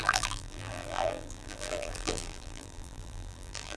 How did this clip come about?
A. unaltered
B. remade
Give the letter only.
B